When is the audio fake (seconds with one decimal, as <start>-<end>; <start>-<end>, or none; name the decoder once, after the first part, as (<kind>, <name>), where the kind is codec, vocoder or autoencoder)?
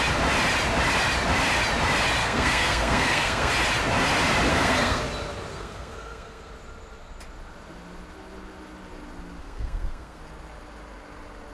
2.2-3.5 (codec, SNAC); 4.5-5.0; 5.5-6.5; 9.4-10.2